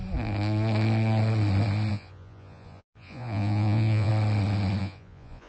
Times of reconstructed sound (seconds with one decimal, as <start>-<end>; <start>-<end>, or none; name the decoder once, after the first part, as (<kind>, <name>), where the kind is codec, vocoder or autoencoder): 1.9-4.1 (vocoder, Vocos); 4.8-5.5